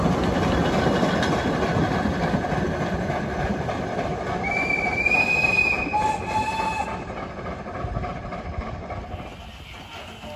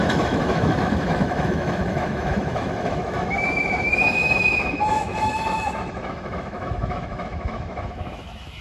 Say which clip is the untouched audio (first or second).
first